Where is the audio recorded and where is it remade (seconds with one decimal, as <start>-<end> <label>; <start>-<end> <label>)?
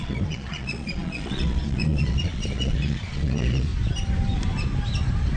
0.0-3.7 remade; 3.7-5.4 recorded